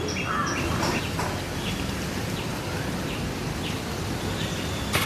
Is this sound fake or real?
real